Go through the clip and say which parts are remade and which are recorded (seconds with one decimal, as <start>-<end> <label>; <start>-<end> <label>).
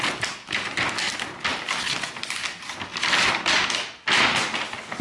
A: 0.0-5.0 recorded